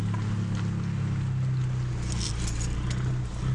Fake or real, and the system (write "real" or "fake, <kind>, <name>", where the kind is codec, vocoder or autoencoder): real